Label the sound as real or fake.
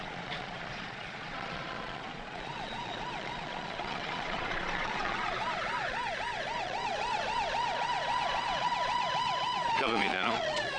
fake